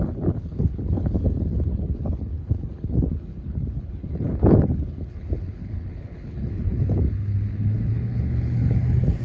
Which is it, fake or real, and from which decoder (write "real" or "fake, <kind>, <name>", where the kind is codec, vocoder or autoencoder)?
fake, codec, HILCodec